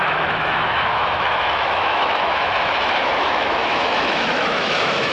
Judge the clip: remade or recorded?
remade